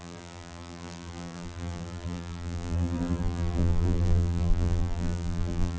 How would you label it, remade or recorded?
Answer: remade